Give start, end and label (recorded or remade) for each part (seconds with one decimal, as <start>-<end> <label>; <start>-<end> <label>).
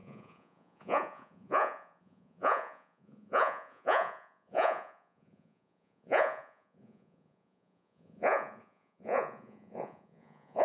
0.0-10.6 remade